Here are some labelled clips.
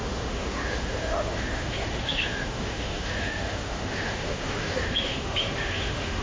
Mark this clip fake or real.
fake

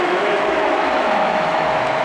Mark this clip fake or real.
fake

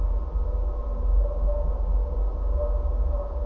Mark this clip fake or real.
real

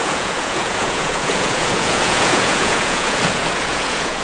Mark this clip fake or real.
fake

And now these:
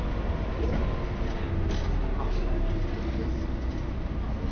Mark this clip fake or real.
real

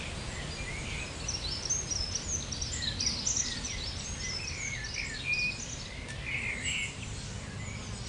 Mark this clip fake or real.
real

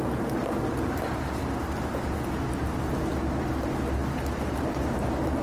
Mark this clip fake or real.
real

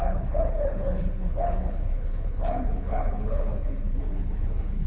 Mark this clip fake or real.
fake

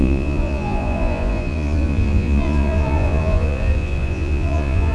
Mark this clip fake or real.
fake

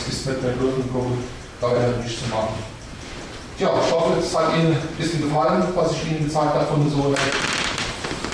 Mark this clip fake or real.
fake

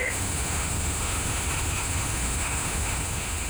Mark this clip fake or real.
fake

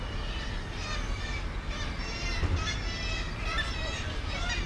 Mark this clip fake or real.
real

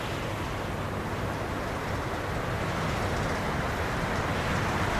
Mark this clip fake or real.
real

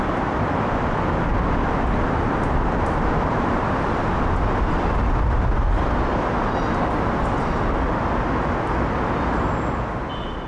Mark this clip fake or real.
real